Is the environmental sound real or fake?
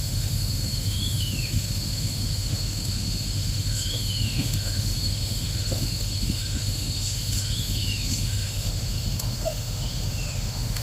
fake